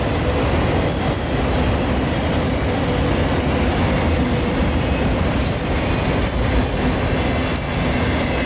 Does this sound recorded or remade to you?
recorded